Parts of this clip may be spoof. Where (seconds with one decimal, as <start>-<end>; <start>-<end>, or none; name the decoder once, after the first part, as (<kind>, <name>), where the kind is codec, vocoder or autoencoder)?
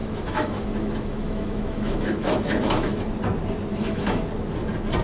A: 0.0-3.0 (autoencoder, DAC-VAE); 3.7-4.2